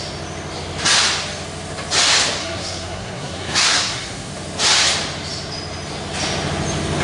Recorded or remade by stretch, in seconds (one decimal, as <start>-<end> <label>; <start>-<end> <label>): 0.0-2.4 recorded; 2.4-4.3 remade; 4.3-7.0 recorded